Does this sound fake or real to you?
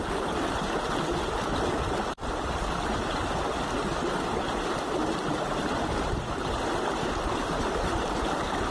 real